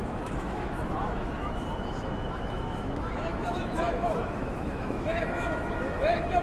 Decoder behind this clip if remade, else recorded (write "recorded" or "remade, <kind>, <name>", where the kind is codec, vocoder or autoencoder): remade, autoencoder, DAC-VAE